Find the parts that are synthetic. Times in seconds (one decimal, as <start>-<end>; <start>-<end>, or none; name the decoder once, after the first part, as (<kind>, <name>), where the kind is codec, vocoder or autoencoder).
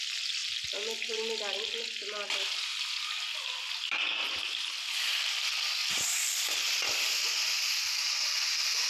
5.8-7.3 (vocoder, BigVGAN v2)